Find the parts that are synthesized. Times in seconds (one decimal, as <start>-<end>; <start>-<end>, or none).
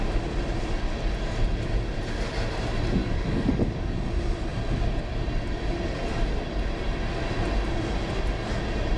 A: 3.0-4.0